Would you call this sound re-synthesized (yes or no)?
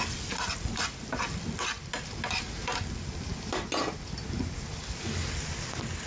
no